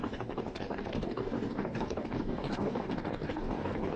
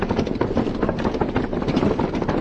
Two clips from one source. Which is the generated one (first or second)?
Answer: first